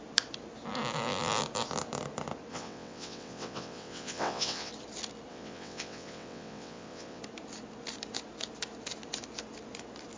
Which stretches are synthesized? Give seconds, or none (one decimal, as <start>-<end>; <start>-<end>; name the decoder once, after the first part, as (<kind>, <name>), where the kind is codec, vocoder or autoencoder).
2.5-4.7 (vocoder, WaveNeXt); 5.3-7.2